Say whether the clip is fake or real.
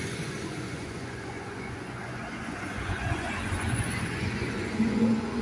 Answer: fake